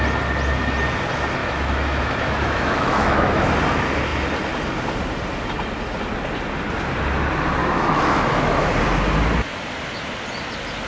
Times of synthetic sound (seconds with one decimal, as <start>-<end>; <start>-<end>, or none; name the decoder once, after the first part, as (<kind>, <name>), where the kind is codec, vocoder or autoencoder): 1.4-3.5 (autoencoder, DAC-VAE); 7.6-8.7